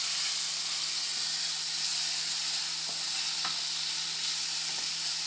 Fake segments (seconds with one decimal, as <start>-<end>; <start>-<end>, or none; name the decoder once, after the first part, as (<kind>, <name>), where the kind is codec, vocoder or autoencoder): none